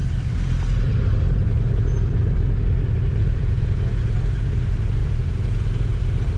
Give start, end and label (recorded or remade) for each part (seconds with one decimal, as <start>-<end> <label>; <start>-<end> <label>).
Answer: 0.0-3.2 recorded; 3.2-4.5 remade; 4.5-5.0 recorded; 5.0-6.0 remade; 6.0-6.4 recorded